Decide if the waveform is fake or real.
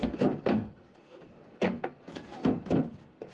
fake